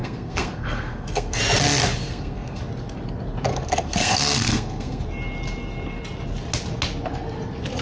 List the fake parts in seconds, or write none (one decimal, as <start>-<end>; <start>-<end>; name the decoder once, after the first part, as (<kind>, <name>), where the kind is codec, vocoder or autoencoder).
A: 0.0-1.4 (codec, SNAC); 2.0-2.6; 3.5-5.0